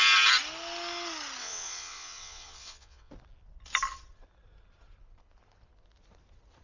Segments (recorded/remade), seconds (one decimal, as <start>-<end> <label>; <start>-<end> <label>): 0.0-1.4 recorded; 1.4-3.1 remade; 3.1-6.6 recorded